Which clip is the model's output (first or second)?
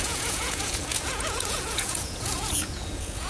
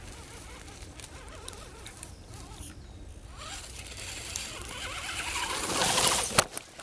first